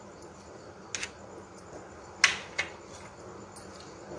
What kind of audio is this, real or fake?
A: real